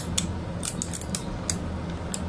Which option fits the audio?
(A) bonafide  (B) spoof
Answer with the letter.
A